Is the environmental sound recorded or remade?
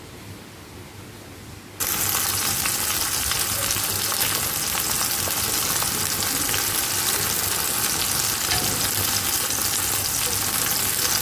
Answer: recorded